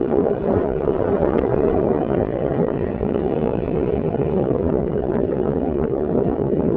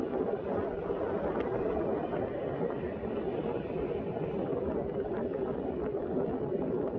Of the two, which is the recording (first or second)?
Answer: second